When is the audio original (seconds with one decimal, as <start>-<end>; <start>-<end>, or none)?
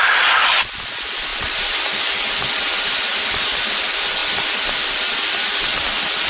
0.0-6.3